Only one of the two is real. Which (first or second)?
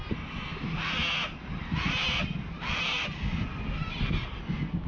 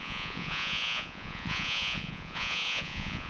first